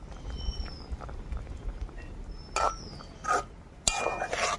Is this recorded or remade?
recorded